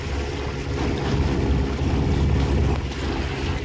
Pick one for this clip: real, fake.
real